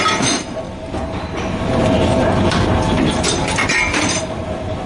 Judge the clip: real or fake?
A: real